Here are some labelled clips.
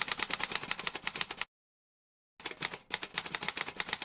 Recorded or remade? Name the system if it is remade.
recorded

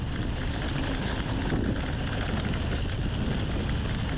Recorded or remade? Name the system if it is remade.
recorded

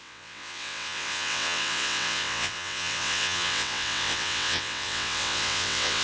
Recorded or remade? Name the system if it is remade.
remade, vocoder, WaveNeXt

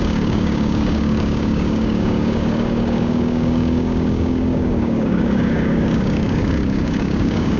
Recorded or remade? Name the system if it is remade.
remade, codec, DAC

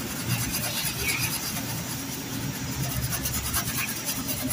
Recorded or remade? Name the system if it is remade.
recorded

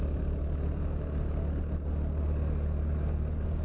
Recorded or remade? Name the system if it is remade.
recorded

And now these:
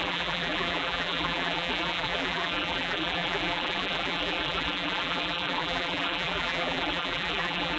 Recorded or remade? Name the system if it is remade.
remade, vocoder, BigVGAN v2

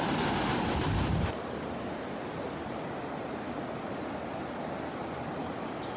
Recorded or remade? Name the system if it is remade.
recorded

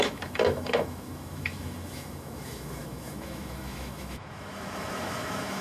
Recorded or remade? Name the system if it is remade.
remade, autoencoder, DAC-VAE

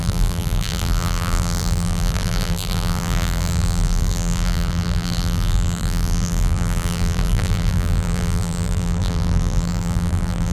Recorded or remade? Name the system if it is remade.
remade, vocoder, BigVGAN v2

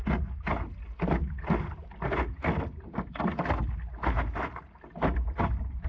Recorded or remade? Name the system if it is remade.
recorded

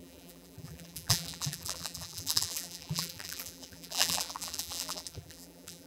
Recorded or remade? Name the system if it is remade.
remade, vocoder, BigVGAN v2